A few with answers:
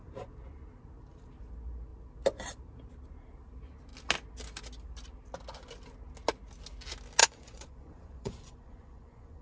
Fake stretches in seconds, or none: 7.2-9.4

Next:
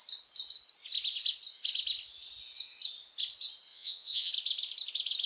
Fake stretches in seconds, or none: 3.7-4.3

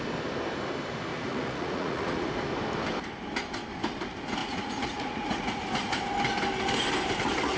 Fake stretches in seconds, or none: 1.1-2.3; 4.4-5.6

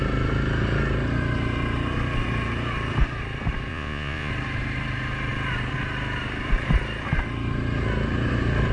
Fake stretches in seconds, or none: 3.7-4.3

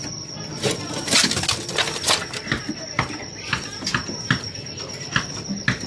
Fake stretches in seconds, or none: none

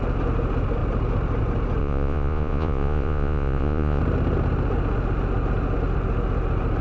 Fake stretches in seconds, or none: 1.8-4.0

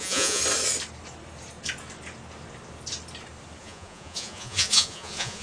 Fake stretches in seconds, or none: 0.0-0.4; 3.6-5.4